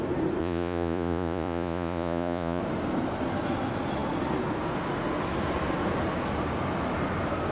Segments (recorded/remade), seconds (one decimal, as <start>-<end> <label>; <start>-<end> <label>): 0.0-0.4 recorded; 0.4-2.6 remade; 2.6-7.5 recorded